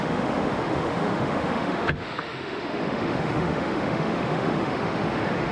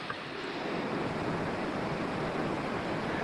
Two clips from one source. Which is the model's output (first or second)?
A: first